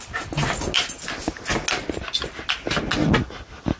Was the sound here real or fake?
real